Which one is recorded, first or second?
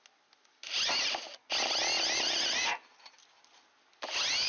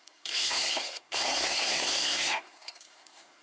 first